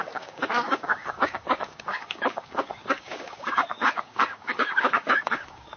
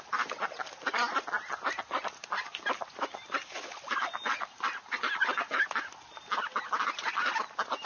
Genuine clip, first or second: second